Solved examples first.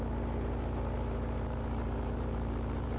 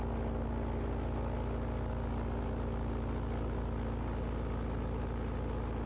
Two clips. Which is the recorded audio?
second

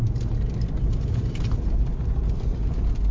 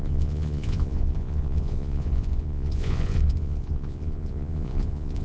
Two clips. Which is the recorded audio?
first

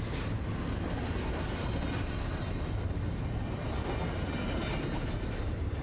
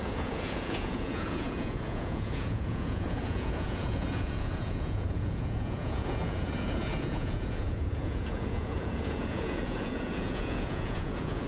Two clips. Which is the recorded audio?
first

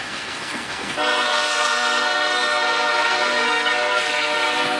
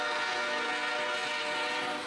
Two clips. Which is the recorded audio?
second